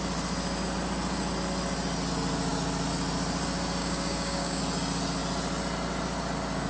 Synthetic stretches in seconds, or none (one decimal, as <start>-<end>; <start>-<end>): 3.8-4.6